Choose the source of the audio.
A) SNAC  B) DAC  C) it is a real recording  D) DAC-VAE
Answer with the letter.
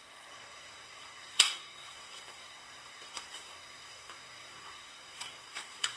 A